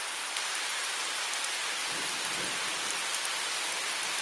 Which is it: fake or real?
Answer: real